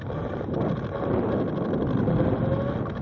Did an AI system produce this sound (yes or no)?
no